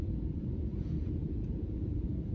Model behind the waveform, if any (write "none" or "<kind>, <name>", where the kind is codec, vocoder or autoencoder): vocoder, Vocos